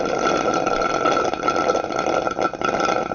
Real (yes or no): no